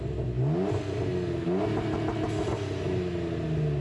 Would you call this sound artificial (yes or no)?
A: no